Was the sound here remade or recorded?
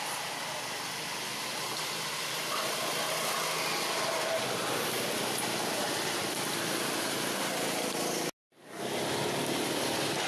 recorded